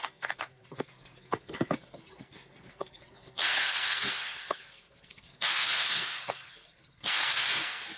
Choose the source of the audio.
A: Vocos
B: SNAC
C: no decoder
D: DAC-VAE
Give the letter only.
B